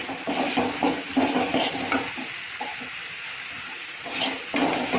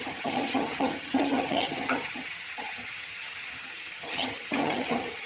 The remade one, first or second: second